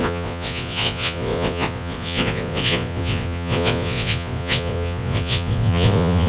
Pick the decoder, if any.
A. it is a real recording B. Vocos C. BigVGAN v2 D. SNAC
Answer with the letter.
B